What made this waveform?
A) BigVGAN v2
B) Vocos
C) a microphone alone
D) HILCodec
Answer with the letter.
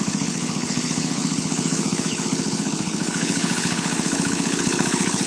D